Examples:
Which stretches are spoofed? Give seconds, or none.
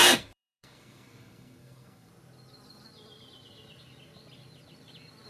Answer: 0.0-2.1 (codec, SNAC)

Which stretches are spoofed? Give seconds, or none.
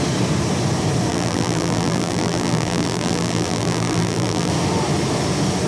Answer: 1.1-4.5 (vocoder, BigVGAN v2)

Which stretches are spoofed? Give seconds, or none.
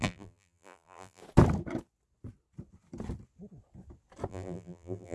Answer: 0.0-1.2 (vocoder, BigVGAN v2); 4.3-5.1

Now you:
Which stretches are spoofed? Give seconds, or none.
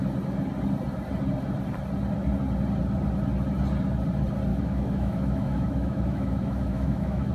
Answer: 4.5-7.3 (autoencoder, DAC-VAE)